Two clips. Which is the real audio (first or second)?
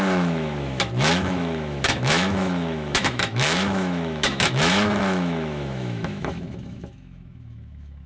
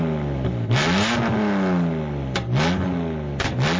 second